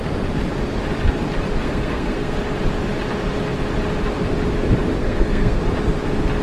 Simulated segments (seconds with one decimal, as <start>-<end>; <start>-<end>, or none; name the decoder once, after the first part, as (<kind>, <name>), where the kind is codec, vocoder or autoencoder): 1.6-2.4 (codec, SNAC); 5.0-5.6